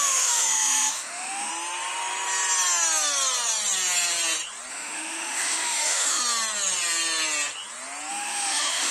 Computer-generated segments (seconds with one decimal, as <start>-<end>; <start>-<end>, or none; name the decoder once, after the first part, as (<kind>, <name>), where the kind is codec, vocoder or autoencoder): 0.0-1.5 (autoencoder, DAC-VAE); 4.7-6.2; 8.1-8.9

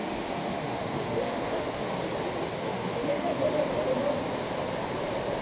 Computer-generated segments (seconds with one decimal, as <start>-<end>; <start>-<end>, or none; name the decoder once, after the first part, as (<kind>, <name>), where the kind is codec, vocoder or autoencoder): 0.0-2.0 (autoencoder, DAC-VAE); 2.6-3.4

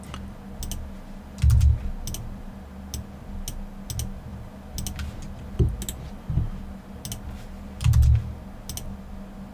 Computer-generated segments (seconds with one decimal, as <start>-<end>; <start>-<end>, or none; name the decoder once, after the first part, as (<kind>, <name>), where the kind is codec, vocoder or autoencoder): none

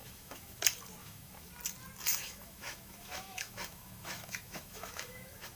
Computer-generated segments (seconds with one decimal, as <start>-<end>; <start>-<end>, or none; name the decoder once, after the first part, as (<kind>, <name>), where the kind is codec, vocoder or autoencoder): 0.0-0.6 (autoencoder, DAC-VAE); 1.0-1.5; 2.1-5.6

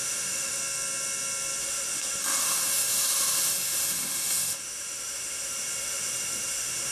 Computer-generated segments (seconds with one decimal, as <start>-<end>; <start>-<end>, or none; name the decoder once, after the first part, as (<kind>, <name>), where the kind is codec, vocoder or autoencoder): 0.0-0.6 (autoencoder, DAC-VAE); 1.6-6.9

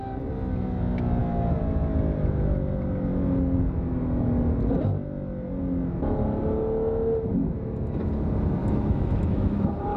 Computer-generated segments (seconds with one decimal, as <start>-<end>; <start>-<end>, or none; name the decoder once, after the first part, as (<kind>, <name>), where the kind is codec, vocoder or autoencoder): 7.3-8.1 (autoencoder, DAC-VAE); 8.6-9.6

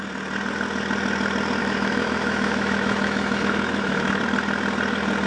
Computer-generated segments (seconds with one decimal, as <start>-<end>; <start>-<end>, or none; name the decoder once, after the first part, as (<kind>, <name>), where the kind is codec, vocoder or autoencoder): 1.6-4.2 (autoencoder, DAC-VAE)